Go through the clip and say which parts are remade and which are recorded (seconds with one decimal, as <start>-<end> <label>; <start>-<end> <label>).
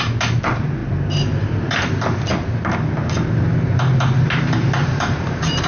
0.0-4.8 recorded; 4.8-5.7 remade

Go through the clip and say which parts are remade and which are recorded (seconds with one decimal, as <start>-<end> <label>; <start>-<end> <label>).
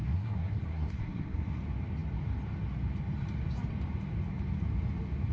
0.0-1.6 remade; 1.6-5.3 recorded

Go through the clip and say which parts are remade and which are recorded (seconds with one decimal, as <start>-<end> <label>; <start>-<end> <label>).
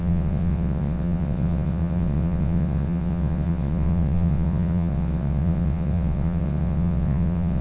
0.0-7.6 remade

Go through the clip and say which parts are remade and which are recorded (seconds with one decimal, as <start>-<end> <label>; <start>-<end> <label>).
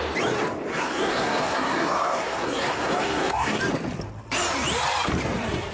0.0-0.7 recorded; 0.7-3.6 remade; 3.6-5.7 recorded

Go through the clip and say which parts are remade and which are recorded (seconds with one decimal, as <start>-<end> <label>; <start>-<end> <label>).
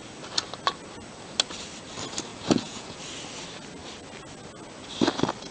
0.0-2.3 recorded; 2.3-3.0 remade; 3.0-5.5 recorded